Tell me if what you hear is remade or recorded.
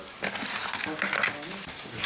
recorded